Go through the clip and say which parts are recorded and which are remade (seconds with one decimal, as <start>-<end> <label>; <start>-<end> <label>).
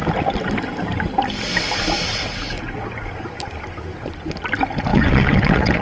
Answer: 0.0-4.9 recorded; 4.9-5.8 remade